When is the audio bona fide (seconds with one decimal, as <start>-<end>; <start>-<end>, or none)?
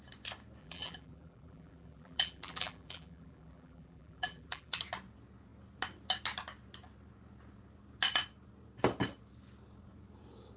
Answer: 0.0-0.6; 4.8-10.6